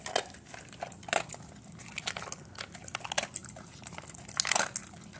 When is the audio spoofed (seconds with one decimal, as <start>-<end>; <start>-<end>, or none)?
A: none

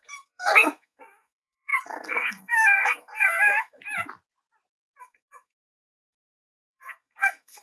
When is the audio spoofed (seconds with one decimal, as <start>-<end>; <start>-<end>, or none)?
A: 0.0-3.8; 5.0-7.6

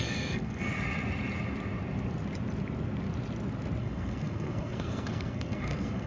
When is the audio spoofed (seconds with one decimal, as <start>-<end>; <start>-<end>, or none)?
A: 0.0-0.7; 3.8-6.1

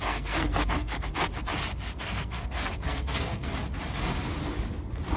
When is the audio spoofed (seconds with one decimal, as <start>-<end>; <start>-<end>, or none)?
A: 0.0-1.1; 2.0-3.5

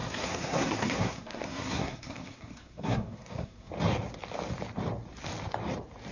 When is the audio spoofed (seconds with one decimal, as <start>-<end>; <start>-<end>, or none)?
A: 0.0-3.7

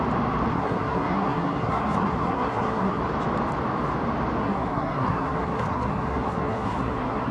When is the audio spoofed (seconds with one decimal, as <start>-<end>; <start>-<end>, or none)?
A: 0.5-3.0; 4.4-7.3

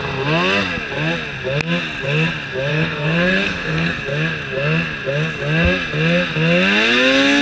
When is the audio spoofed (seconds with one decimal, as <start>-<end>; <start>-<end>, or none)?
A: 2.7-4.0

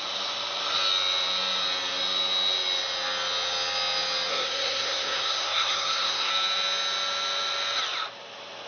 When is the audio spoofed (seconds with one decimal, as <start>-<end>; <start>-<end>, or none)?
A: 4.3-6.3